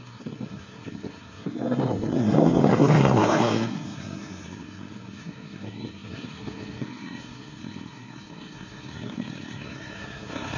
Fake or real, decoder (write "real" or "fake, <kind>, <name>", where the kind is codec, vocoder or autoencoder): fake, codec, SNAC